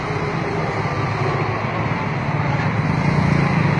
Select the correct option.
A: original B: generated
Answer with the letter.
A